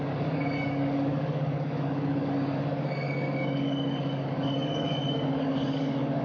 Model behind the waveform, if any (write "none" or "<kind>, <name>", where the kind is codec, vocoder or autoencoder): codec, DAC